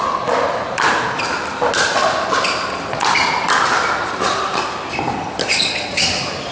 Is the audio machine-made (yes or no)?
no